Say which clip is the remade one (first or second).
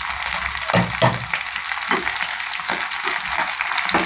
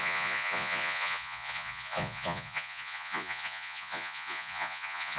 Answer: second